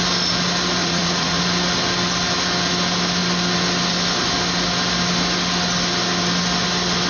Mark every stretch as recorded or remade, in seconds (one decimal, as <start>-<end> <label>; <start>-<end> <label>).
0.0-0.8 recorded; 0.8-1.4 remade; 1.4-7.1 recorded